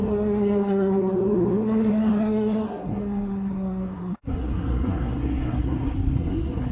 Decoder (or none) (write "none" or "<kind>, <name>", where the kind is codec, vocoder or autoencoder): codec, SNAC